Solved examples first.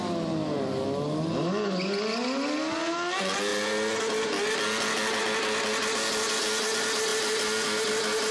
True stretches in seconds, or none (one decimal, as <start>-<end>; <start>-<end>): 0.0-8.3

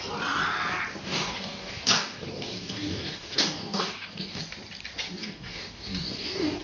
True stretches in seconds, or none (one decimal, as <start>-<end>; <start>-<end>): 0.0-1.0; 4.4-5.2

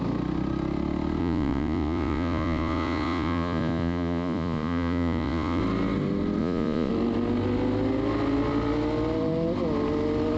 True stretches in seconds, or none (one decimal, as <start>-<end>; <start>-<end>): 0.0-1.2; 5.6-6.4; 6.9-10.4

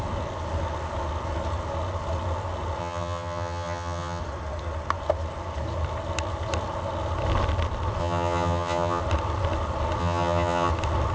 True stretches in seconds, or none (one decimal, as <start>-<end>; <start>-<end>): 0.0-2.8; 4.2-8.0; 9.0-10.0; 10.7-11.1

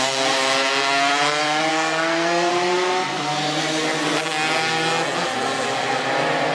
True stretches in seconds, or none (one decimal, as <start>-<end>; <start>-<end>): 0.0-1.7; 2.5-6.5